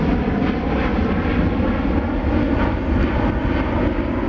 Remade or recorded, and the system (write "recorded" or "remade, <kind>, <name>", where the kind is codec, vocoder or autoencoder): recorded